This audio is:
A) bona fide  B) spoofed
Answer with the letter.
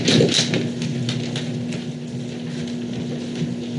A